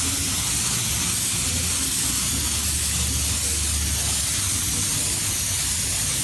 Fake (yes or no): no